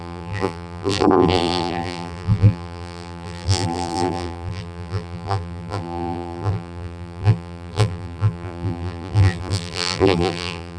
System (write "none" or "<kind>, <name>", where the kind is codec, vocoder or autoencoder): vocoder, BigVGAN v2